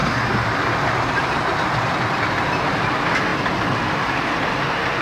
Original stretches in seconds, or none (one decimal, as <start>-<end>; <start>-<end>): 0.0-5.0